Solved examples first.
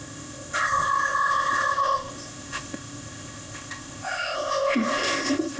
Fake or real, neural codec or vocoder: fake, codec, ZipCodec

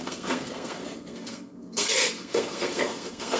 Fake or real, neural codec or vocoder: fake, codec, SNAC